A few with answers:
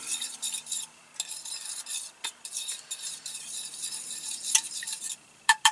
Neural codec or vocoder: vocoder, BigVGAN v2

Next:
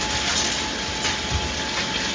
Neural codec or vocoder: none